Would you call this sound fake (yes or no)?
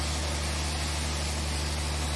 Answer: no